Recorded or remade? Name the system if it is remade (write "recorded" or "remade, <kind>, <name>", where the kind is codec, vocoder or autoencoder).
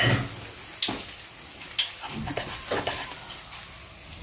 recorded